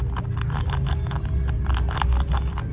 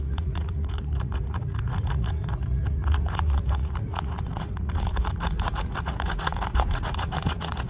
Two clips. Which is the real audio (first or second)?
first